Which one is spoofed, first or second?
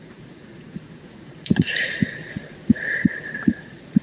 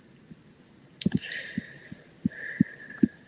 first